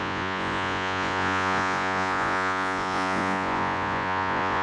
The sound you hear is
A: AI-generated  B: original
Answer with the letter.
A